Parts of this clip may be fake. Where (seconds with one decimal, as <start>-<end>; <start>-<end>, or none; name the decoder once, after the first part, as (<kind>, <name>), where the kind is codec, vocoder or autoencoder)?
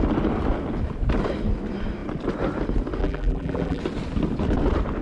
3.0-3.8 (vocoder, BigVGAN v2)